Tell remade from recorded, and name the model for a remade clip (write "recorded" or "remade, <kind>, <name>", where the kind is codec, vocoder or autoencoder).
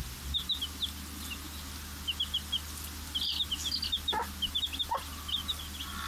recorded